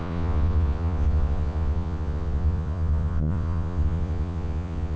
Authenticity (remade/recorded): remade